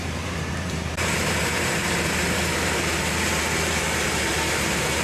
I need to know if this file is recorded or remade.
remade